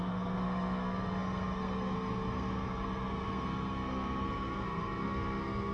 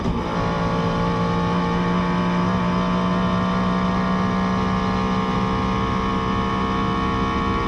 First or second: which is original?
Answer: second